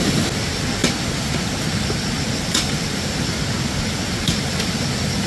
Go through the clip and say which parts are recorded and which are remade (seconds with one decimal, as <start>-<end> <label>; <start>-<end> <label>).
0.0-5.3 recorded